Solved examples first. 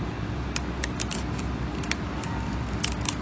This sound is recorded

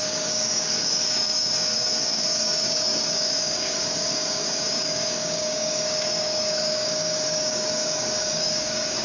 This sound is remade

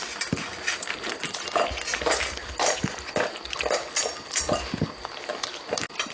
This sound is recorded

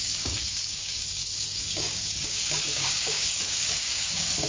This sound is remade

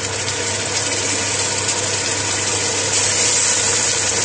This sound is recorded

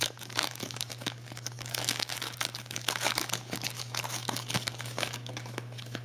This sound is remade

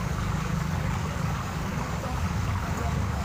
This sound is remade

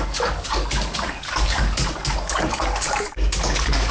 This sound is remade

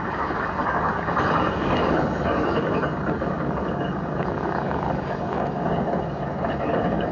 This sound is remade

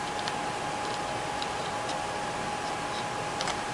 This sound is recorded